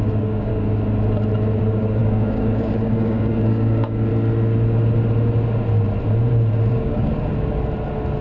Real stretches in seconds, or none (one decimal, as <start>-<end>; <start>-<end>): 0.5-1.6; 4.1-6.7; 7.3-8.2

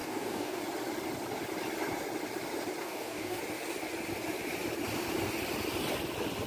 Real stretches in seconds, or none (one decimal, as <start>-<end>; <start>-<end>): 0.6-2.8; 3.4-6.5

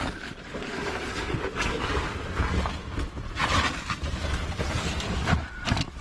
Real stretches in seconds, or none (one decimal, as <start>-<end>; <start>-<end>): 2.1-5.5

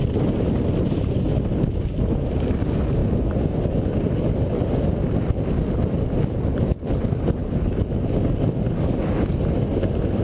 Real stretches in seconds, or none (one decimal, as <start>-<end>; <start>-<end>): 0.0-7.4; 7.9-10.2

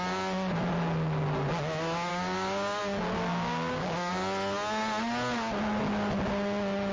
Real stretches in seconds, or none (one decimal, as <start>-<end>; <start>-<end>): 0.0-2.1; 2.8-3.3; 4.1-6.9

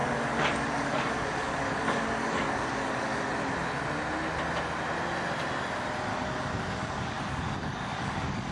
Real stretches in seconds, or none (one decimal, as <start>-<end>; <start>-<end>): 3.3-6.1

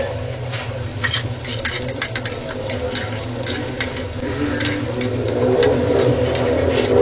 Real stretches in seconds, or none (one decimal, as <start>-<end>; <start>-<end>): 0.0-7.0